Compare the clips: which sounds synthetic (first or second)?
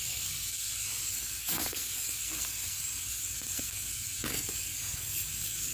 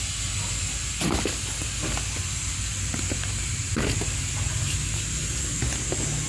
first